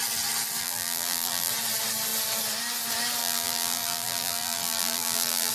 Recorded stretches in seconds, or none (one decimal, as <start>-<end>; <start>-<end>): 0.0-0.6; 1.5-3.2